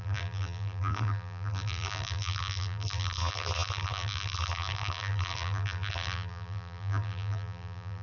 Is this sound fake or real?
fake